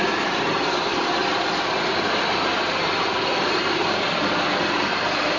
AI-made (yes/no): no